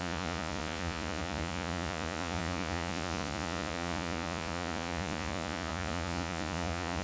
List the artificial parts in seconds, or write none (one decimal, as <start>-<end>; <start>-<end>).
0.0-7.0